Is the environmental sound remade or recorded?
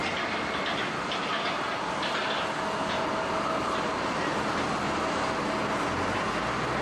recorded